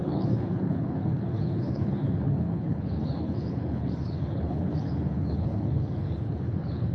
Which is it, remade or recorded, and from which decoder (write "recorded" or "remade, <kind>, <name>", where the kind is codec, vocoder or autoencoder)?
remade, codec, HILCodec